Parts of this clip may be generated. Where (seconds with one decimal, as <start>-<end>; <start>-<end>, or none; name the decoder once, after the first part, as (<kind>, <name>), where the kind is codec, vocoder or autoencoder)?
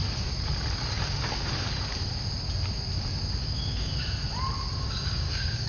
3.4-3.9 (codec, DAC); 4.8-5.7